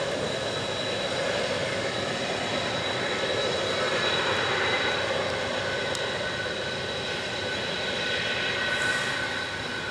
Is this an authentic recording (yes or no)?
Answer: yes